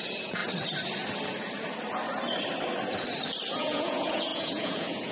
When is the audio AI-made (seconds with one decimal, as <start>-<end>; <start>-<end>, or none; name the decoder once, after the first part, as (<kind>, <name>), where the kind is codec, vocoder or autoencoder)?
0.0-0.4 (vocoder, Vocos); 3.5-5.1